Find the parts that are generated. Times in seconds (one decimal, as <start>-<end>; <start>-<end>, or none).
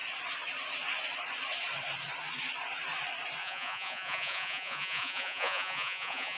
3.4-6.4